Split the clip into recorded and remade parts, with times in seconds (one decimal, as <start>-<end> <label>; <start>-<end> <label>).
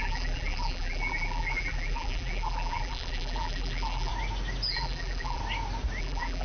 0.0-4.1 remade; 4.1-4.7 recorded; 4.7-5.4 remade; 5.4-6.0 recorded; 6.0-6.4 remade